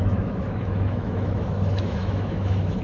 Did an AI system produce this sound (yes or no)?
yes